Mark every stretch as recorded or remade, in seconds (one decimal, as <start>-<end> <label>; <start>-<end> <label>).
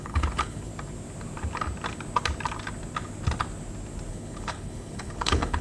0.0-0.7 remade; 0.7-4.1 recorded; 4.1-5.6 remade